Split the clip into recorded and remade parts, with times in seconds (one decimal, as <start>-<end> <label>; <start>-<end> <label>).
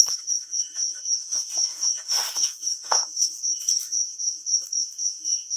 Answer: 0.0-5.6 remade